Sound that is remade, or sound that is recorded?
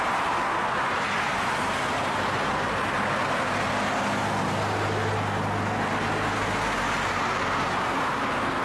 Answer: recorded